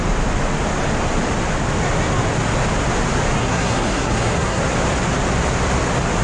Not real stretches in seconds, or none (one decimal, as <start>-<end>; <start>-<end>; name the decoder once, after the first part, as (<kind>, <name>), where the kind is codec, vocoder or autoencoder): 3.4-4.6 (codec, SNAC)